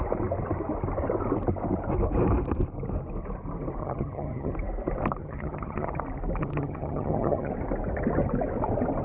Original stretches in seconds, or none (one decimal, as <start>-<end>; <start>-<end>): 0.0-3.8; 4.5-5.2; 5.9-6.4; 7.5-9.0